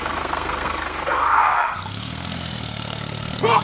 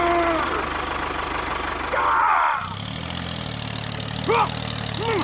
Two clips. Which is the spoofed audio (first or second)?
first